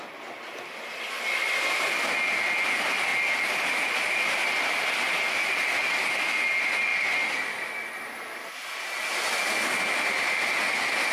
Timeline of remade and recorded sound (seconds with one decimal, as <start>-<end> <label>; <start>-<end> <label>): 0.0-11.1 recorded